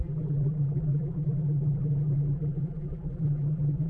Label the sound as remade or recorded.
remade